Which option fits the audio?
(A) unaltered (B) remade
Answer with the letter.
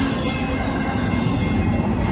A